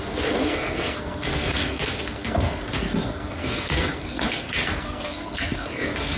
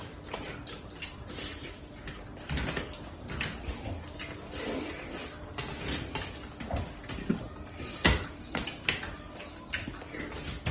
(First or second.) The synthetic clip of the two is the first